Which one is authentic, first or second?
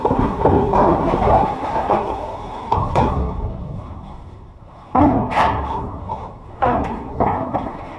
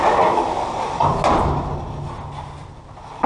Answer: second